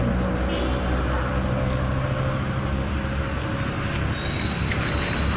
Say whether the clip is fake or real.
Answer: real